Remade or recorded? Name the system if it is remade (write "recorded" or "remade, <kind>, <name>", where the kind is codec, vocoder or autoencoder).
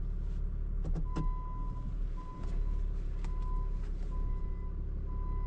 recorded